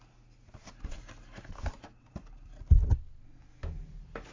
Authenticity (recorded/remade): recorded